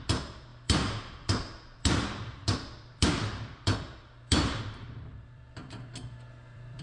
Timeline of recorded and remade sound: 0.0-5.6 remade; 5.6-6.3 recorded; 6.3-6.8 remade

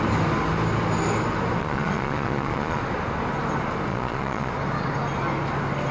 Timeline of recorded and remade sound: 0.0-1.6 recorded; 1.6-2.8 remade; 2.8-3.9 recorded; 3.9-4.5 remade; 4.5-5.9 recorded